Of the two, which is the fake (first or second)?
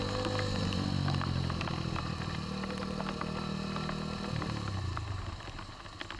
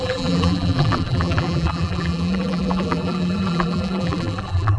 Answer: second